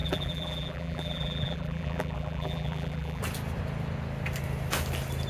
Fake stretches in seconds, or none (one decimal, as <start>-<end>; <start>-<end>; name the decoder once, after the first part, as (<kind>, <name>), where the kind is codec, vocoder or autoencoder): 0.0-3.2 (vocoder, BigVGAN v2)